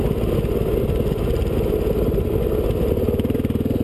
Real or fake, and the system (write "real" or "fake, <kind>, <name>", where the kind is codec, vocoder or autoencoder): real